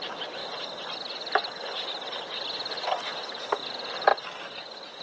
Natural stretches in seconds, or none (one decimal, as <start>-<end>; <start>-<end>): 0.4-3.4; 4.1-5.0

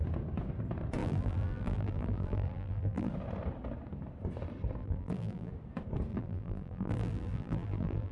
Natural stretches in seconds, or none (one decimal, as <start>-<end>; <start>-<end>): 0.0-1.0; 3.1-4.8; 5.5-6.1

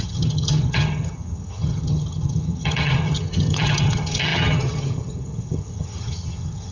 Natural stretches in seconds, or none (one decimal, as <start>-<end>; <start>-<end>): none